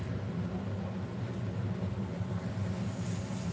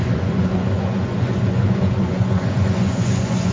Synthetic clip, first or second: second